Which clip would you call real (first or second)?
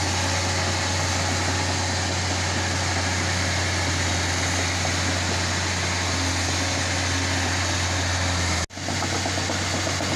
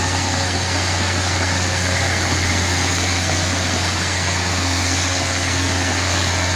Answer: first